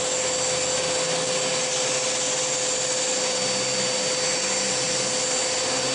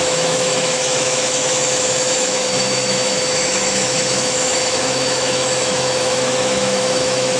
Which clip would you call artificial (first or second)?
second